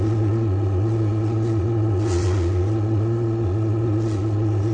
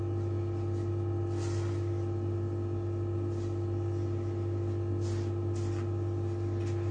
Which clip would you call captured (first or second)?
second